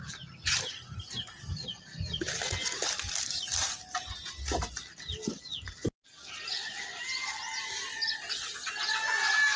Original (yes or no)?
yes